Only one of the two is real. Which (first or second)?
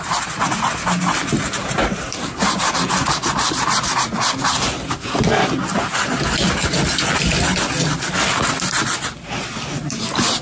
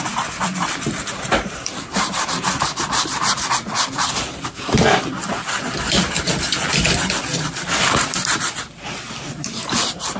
first